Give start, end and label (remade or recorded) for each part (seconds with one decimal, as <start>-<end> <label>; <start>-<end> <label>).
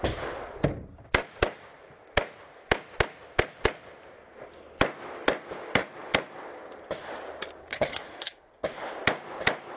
0.0-7.6 recorded; 7.6-8.5 remade; 8.5-9.8 recorded